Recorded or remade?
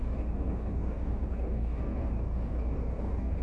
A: remade